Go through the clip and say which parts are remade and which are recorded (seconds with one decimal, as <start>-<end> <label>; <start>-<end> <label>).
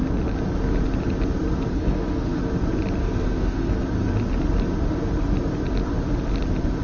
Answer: 0.0-1.7 recorded; 1.7-2.4 remade; 2.4-3.0 recorded; 3.0-3.7 remade; 3.7-6.8 recorded